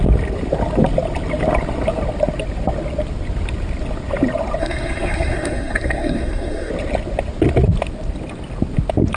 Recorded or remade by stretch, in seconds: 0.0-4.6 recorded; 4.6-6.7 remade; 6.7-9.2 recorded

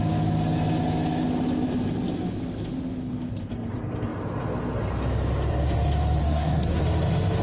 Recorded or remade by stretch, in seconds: 0.0-6.2 recorded; 6.2-6.8 remade; 6.8-7.4 recorded

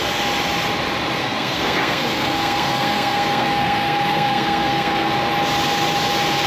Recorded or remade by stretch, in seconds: 0.0-1.2 recorded; 1.2-5.1 remade; 5.1-6.5 recorded

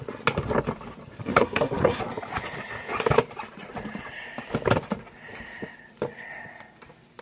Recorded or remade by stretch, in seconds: 0.0-1.2 recorded; 1.2-2.0 remade; 2.0-7.2 recorded

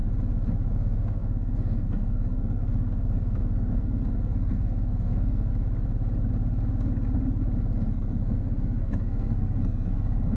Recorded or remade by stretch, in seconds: 0.0-0.7 recorded; 0.7-5.5 remade; 5.5-7.9 recorded; 7.9-10.4 remade